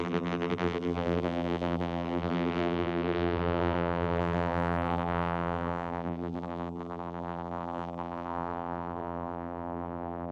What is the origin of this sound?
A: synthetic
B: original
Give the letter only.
A